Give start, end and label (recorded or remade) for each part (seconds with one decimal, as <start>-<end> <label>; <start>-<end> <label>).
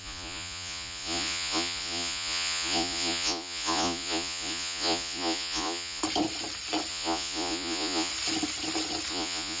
0.0-6.0 remade; 6.0-6.9 recorded; 6.9-8.1 remade; 8.1-9.1 recorded; 9.1-9.6 remade